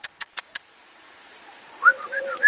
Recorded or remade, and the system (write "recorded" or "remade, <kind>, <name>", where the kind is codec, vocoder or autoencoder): remade, vocoder, Vocos